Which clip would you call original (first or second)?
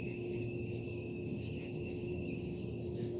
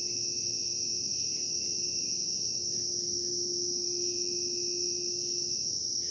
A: second